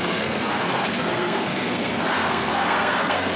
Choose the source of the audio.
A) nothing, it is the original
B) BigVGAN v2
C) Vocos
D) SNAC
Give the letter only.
D